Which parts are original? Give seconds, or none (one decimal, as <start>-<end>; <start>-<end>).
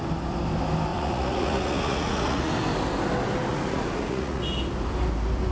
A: 0.0-0.9; 2.5-3.5; 4.4-5.5